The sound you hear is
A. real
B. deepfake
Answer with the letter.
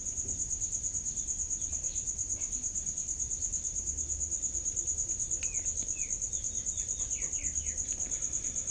A